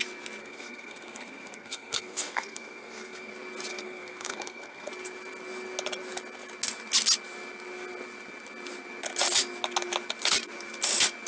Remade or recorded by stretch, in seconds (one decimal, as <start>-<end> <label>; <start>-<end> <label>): 0.0-0.4 recorded; 0.4-3.3 remade; 3.3-3.7 recorded; 3.7-4.9 remade; 4.9-11.3 recorded